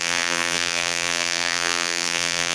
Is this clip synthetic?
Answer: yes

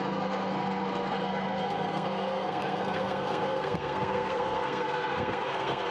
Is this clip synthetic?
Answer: yes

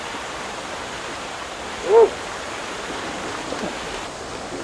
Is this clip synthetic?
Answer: no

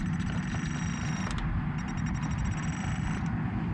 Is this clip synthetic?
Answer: no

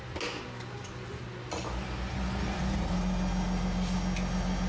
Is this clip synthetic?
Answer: no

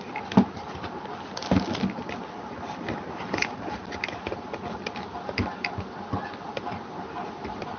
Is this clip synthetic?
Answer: no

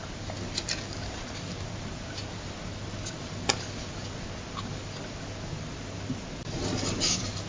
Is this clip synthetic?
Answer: no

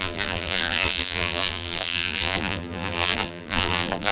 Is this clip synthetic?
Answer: yes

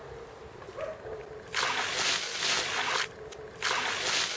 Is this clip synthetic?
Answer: no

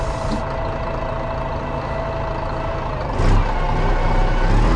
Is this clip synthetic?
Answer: no